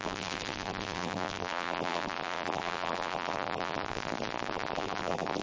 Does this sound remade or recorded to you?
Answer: remade